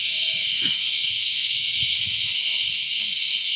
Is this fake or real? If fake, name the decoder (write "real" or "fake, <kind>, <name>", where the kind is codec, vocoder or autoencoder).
fake, codec, SNAC